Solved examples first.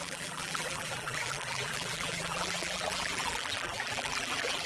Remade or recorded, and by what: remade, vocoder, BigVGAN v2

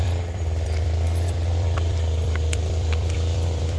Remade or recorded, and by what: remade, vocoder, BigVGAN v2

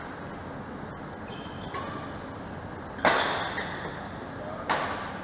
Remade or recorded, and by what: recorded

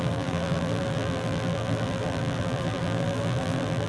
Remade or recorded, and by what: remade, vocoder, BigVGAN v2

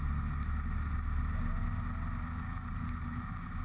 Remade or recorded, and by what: recorded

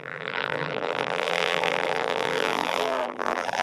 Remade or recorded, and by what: remade, vocoder, BigVGAN v2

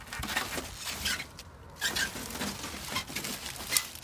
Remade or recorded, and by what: recorded